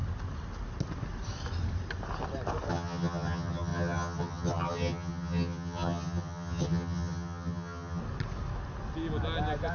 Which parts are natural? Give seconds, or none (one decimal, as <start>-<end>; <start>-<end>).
0.0-2.7; 8.0-9.7